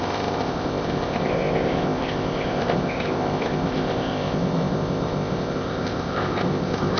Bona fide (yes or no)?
no